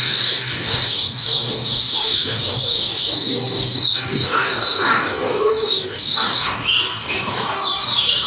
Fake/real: fake